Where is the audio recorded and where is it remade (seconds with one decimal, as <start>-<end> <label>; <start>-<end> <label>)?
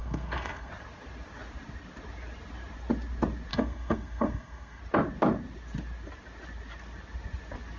0.0-0.7 remade; 0.7-3.5 recorded; 3.5-4.8 remade; 4.8-7.8 recorded